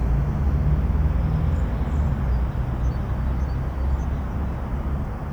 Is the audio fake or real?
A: real